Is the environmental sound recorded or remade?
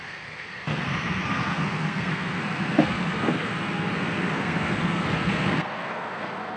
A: remade